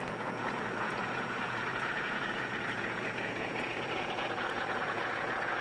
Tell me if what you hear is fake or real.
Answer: fake